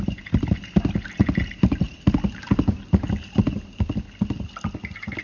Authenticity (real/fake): real